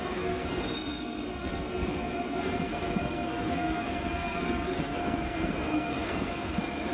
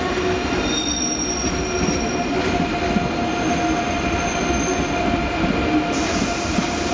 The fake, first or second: first